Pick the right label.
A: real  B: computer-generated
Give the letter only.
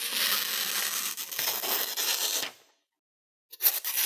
A